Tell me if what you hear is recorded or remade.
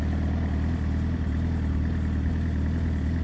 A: recorded